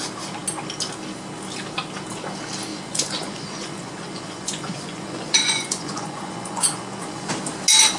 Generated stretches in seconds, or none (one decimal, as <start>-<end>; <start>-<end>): 2.7-7.3